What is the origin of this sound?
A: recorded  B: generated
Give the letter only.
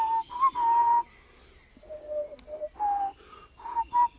A